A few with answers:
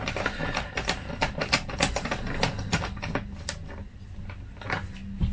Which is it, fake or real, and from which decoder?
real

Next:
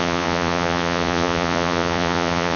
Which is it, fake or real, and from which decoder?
fake, vocoder, Vocos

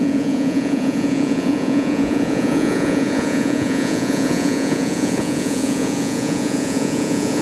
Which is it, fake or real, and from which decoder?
fake, vocoder, Vocos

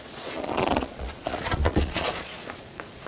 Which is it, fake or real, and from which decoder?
fake, vocoder, Vocos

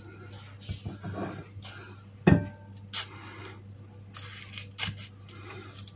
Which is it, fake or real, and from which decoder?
real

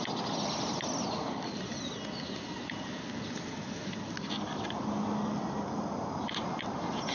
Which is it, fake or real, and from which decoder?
real